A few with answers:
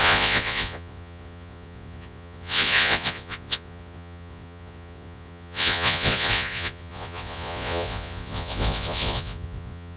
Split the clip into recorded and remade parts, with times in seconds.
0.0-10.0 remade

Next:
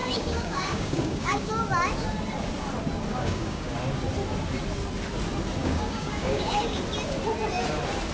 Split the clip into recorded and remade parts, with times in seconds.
0.0-1.5 remade; 1.5-3.1 recorded; 3.1-3.7 remade; 3.7-5.6 recorded; 5.6-6.8 remade; 6.8-8.1 recorded

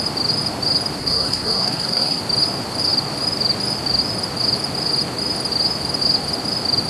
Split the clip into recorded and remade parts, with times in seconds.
0.0-1.0 recorded; 1.0-2.2 remade; 2.2-6.9 recorded

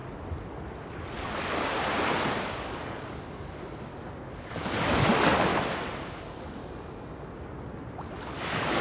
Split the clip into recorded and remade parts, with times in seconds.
0.0-2.4 recorded; 2.4-3.9 remade; 3.9-4.5 recorded; 4.5-5.5 remade; 5.5-6.1 recorded; 6.1-6.6 remade; 6.6-8.4 recorded; 8.4-8.8 remade

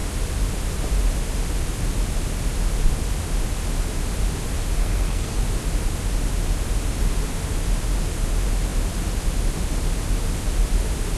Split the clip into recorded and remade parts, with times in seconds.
0.0-4.8 recorded; 4.8-5.4 remade; 5.4-11.2 recorded

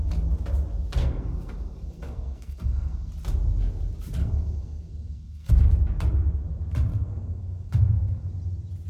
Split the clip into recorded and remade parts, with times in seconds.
0.0-1.0 recorded; 1.0-3.1 remade; 3.1-4.2 recorded; 4.2-5.5 remade; 5.5-6.9 recorded; 6.9-8.3 remade; 8.3-8.9 recorded

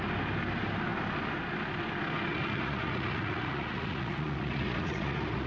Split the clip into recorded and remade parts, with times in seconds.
0.0-2.3 recorded; 2.3-5.5 remade